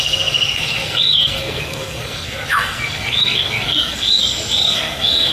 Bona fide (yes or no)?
no